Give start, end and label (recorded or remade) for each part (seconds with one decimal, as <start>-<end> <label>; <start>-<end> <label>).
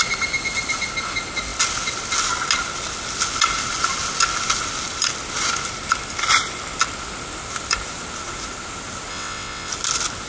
0.0-9.1 recorded; 9.1-9.7 remade; 9.7-10.3 recorded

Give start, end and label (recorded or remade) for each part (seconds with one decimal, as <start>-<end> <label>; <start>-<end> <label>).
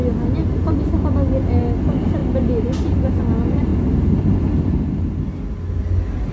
0.0-6.3 recorded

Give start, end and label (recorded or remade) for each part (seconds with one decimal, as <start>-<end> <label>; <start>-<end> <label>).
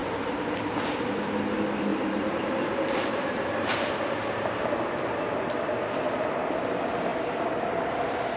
0.0-1.9 recorded; 1.9-3.7 remade; 3.7-8.4 recorded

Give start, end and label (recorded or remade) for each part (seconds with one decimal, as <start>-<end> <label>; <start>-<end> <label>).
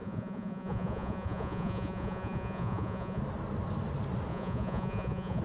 0.0-3.2 remade; 3.2-4.3 recorded; 4.3-5.4 remade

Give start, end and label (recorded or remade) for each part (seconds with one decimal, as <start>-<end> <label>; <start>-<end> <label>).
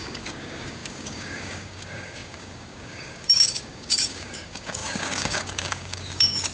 0.0-6.5 remade